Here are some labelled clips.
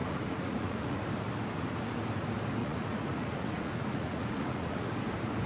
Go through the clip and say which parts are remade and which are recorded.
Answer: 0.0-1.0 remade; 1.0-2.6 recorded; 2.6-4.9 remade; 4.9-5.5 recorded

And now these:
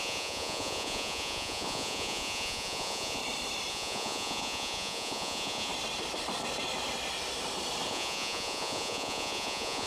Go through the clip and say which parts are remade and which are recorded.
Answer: 0.0-3.2 remade; 3.2-3.7 recorded; 3.7-5.7 remade; 5.7-7.9 recorded; 7.9-9.9 remade

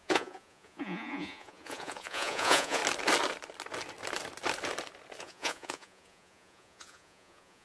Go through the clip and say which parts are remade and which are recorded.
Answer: 0.0-2.8 remade; 2.8-5.2 recorded; 5.2-7.6 remade

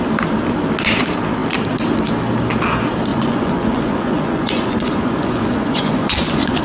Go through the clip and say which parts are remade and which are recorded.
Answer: 0.0-3.1 recorded; 3.1-6.6 remade